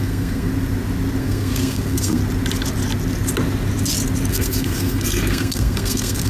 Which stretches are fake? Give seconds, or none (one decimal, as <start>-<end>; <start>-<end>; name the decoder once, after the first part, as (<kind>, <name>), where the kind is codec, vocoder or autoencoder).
0.0-0.5 (codec, SNAC); 1.2-2.2; 4.3-6.3